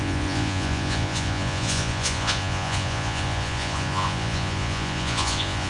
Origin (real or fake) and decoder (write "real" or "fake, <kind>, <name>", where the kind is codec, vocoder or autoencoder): fake, vocoder, Vocos